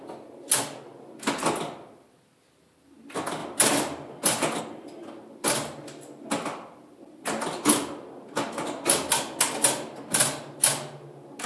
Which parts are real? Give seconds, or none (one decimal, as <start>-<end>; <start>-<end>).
0.0-11.5